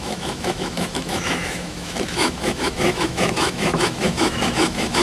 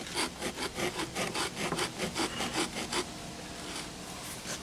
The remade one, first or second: first